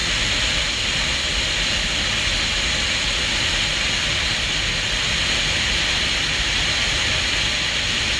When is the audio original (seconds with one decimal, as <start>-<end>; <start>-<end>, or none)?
0.0-8.2